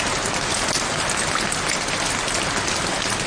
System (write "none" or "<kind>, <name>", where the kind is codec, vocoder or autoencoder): none